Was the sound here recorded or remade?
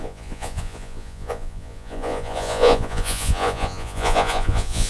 remade